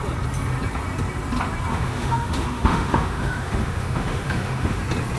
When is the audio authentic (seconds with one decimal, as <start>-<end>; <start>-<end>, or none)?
0.0-1.7; 4.8-5.2